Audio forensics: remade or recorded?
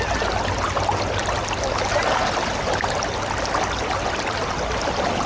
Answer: recorded